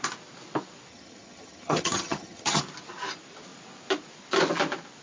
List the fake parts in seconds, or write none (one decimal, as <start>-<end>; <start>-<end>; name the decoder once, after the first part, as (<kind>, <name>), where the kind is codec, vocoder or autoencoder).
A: 0.9-2.6 (vocoder, HiFi-GAN)